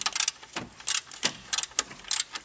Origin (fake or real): real